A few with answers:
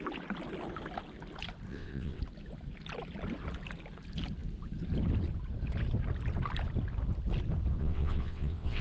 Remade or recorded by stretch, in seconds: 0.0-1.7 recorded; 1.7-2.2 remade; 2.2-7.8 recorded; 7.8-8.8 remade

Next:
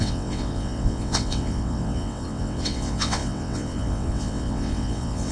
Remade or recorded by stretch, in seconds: 0.0-5.3 remade

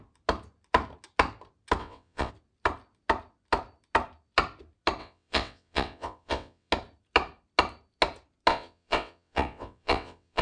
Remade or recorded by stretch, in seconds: 0.0-1.8 recorded; 1.8-2.3 remade; 2.3-5.0 recorded; 5.0-6.7 remade; 6.7-8.5 recorded; 8.5-10.4 remade

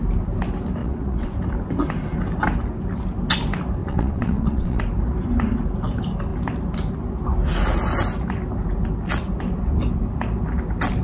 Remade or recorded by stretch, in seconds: 0.0-0.8 recorded; 0.8-1.3 remade; 1.3-3.8 recorded; 3.8-4.8 remade; 4.8-11.0 recorded

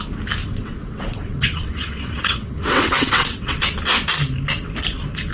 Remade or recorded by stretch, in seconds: 0.0-0.4 recorded; 0.4-3.6 remade; 3.6-5.3 recorded